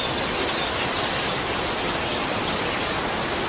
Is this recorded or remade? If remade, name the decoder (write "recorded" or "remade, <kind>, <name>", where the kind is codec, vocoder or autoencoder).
recorded